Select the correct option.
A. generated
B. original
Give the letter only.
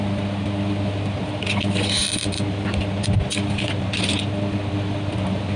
B